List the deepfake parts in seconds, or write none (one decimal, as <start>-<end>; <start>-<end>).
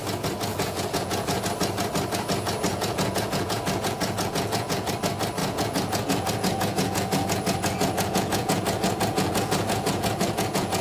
0.5-1.4; 2.7-4.9; 5.4-10.8